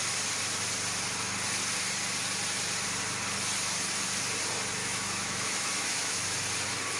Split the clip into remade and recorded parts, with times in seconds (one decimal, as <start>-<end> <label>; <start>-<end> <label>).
0.0-4.8 recorded; 4.8-6.2 remade; 6.2-7.0 recorded